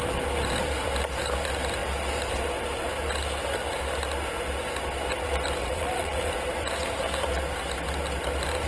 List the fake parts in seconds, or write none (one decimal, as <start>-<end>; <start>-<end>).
5.6-6.3